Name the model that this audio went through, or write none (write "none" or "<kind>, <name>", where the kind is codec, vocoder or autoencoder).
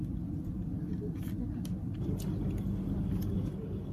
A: none